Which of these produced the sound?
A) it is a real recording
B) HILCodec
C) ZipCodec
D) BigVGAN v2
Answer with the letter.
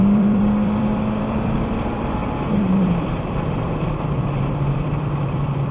D